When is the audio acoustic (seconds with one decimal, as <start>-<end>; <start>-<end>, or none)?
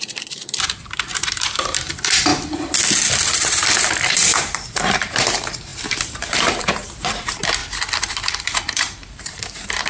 2.3-4.1; 7.6-8.1